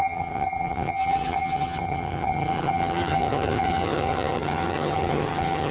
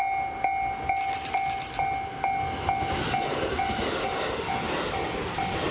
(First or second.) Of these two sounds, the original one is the second